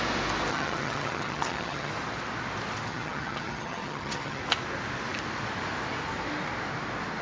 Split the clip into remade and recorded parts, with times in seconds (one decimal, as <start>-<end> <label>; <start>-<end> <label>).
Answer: 0.0-0.5 recorded; 0.5-1.9 remade; 1.9-2.9 recorded; 2.9-4.4 remade; 4.4-7.2 recorded